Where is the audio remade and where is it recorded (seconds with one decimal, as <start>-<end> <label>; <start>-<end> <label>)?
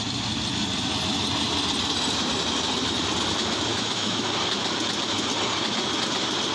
0.0-3.7 recorded; 3.7-4.3 remade; 4.3-6.5 recorded